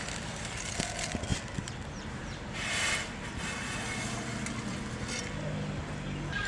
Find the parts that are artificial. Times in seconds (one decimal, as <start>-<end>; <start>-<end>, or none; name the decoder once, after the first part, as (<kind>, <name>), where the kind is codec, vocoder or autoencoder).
none